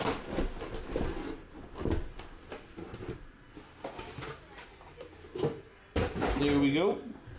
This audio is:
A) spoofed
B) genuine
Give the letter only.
B